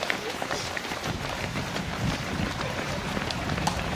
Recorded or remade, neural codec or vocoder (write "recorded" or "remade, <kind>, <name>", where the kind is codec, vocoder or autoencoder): remade, vocoder, BigVGAN v2